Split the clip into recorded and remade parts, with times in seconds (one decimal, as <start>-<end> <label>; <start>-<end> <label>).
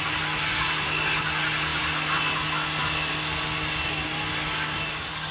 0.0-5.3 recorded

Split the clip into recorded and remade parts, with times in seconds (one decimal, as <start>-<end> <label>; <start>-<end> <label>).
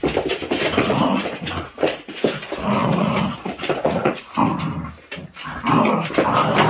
0.0-0.7 recorded; 0.7-2.2 remade; 2.2-2.8 recorded; 2.8-4.6 remade; 4.6-6.7 recorded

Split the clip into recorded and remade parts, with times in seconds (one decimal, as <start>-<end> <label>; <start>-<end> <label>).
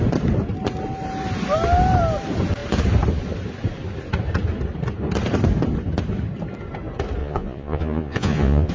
0.0-7.2 recorded; 7.2-8.7 remade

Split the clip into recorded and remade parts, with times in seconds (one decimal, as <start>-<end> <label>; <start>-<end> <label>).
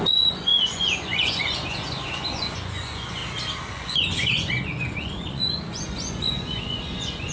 0.0-3.2 remade; 3.2-3.7 recorded; 3.7-7.3 remade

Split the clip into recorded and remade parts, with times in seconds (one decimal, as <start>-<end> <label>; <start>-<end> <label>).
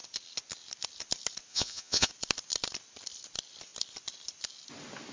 0.0-1.5 recorded; 1.5-2.1 remade; 2.1-5.1 recorded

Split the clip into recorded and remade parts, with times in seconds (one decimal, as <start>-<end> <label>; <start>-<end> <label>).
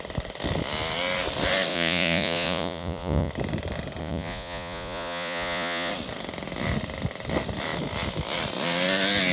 0.0-1.7 recorded; 1.7-3.3 remade; 3.3-4.0 recorded; 4.0-5.9 remade; 5.9-9.3 recorded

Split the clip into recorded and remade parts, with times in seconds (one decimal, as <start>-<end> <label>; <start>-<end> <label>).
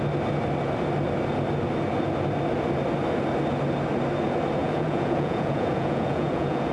0.0-4.6 recorded; 4.6-6.7 remade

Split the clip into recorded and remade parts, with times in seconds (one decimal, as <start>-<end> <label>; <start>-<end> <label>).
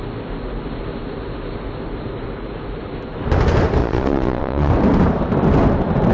0.0-3.8 recorded; 3.8-4.7 remade; 4.7-6.1 recorded